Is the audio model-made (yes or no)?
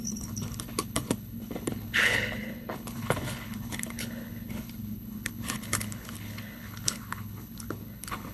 yes